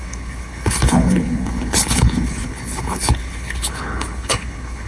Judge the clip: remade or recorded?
remade